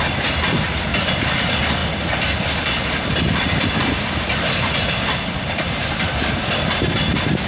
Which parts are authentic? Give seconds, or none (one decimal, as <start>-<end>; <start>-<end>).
none